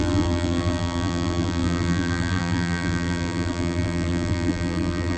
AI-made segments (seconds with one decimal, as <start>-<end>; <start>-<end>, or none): 0.0-5.2